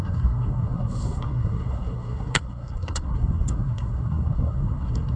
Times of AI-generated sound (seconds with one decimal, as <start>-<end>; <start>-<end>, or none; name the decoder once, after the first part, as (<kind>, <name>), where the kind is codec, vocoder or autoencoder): 0.0-5.2 (codec, SNAC)

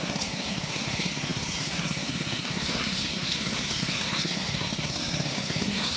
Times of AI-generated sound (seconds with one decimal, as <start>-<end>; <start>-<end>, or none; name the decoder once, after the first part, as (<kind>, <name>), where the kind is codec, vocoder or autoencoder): 0.0-6.0 (codec, SNAC)